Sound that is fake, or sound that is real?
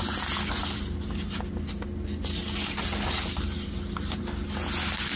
real